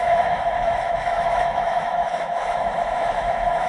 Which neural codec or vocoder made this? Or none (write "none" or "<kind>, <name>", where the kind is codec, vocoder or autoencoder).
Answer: autoencoder, DAC-VAE